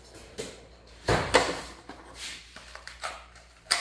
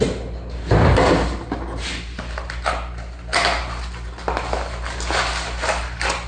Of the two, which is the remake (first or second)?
first